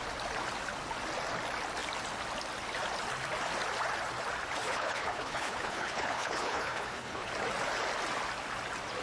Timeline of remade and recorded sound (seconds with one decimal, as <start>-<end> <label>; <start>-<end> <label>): 0.0-4.6 recorded; 4.6-7.3 remade; 7.3-9.0 recorded

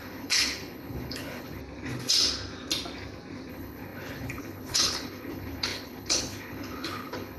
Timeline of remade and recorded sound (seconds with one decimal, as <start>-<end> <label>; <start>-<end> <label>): 0.0-1.6 remade; 1.6-3.5 recorded; 3.5-7.4 remade

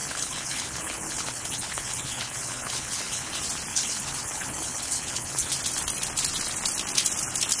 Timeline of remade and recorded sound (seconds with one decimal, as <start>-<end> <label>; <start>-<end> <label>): 0.0-3.3 remade; 3.3-3.7 recorded; 3.7-5.5 remade; 5.5-7.6 recorded

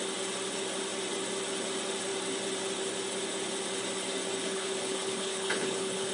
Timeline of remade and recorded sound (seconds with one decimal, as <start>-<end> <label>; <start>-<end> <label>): 0.0-4.4 recorded; 4.4-6.1 remade